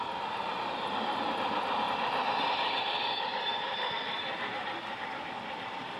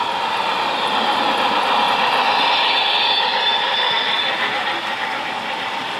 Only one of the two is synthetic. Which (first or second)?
first